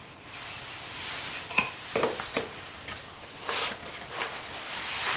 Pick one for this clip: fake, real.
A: real